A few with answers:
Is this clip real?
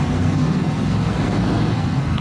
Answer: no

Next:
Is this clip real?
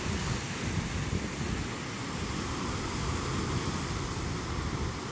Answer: yes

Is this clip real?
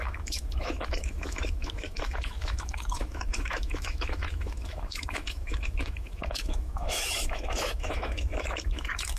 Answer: no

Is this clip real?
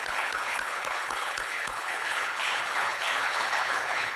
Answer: no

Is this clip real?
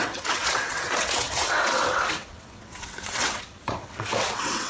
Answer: no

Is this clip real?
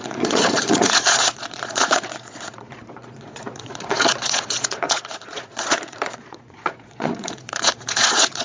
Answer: no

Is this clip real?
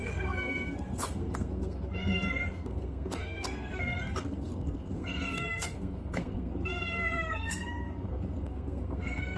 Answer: no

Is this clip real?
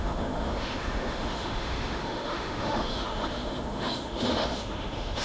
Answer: no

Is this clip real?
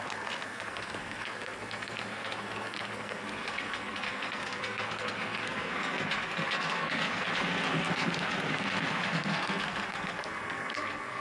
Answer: no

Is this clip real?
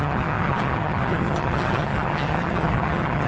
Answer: no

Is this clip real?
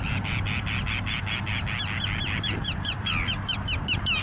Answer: yes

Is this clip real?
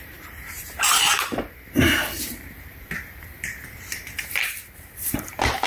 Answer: no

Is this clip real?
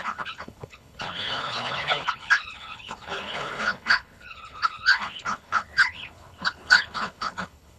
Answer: no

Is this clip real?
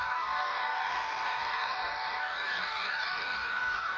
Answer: no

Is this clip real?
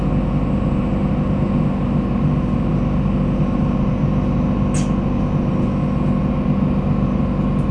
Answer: yes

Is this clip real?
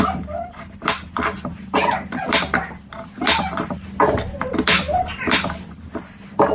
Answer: yes